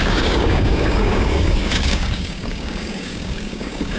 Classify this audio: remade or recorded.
remade